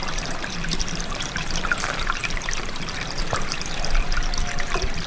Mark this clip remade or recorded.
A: remade